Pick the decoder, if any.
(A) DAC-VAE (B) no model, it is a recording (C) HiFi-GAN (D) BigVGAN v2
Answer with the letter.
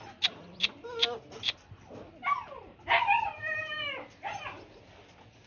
B